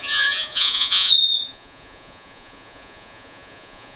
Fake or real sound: fake